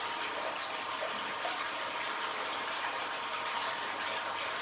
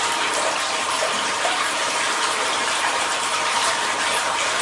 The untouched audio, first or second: first